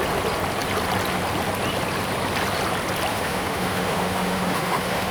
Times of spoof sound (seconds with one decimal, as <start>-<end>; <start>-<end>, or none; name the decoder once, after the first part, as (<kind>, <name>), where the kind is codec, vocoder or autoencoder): 3.1-5.1 (autoencoder, DAC-VAE)